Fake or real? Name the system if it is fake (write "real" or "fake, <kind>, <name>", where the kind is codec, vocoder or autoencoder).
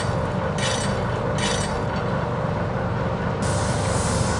real